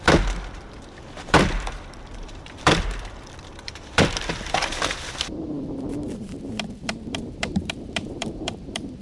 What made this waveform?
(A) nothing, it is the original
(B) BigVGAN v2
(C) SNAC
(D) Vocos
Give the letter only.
B